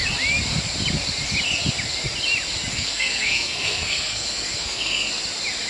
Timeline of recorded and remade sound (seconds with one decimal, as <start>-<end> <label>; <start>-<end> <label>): 0.0-2.7 recorded; 2.7-5.1 remade; 5.1-5.7 recorded